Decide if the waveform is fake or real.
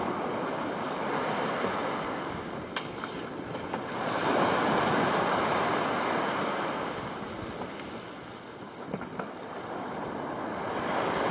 real